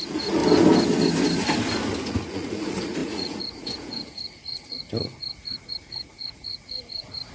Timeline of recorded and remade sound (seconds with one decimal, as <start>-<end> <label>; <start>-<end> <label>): 0.0-0.4 remade; 0.4-2.0 recorded; 2.0-7.3 remade

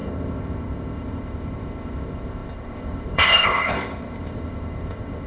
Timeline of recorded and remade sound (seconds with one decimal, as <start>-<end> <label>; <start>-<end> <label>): 0.0-5.3 remade

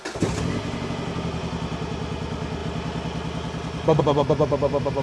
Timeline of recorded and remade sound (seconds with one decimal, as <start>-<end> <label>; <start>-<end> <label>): 0.0-5.0 recorded

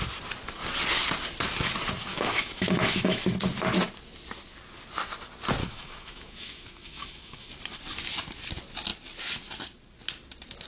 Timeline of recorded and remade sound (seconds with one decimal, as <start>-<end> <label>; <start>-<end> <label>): 0.0-2.1 recorded; 2.1-3.2 remade; 3.2-5.6 recorded; 5.6-7.5 remade; 7.5-10.7 recorded

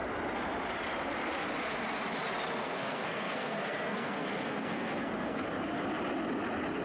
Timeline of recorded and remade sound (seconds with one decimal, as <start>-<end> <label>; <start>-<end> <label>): 0.0-2.6 recorded; 2.6-5.4 remade; 5.4-6.8 recorded